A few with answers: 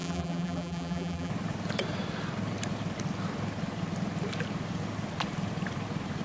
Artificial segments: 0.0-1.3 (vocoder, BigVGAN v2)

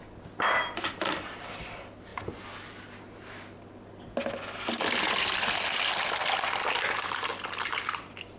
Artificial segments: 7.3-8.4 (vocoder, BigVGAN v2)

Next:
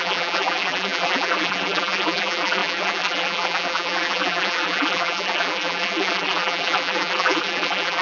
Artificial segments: 0.0-8.0 (vocoder, BigVGAN v2)

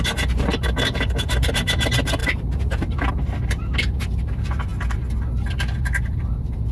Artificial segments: 0.0-4.7 (vocoder, BigVGAN v2); 6.0-6.7

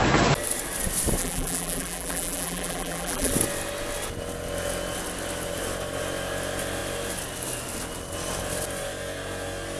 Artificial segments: 1.2-3.3 (vocoder, BigVGAN v2)